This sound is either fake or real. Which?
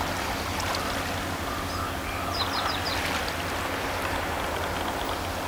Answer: real